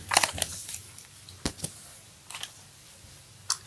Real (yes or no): yes